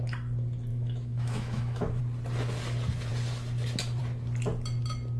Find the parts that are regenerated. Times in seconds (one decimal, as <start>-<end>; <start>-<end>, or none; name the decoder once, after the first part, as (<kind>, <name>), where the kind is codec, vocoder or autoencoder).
0.7-2.0 (autoencoder, DAC-VAE)